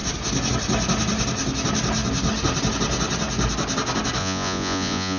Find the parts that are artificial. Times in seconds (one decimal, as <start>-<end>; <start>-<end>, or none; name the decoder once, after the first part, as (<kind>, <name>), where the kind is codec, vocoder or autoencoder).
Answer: 4.2-5.2 (vocoder, Vocos)